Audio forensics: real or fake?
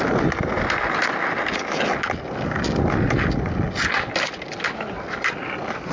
real